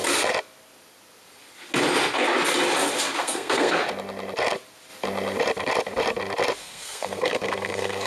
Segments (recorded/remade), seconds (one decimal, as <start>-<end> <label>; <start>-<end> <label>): 0.0-3.2 recorded; 3.2-3.8 remade; 3.8-6.6 recorded; 6.6-8.1 remade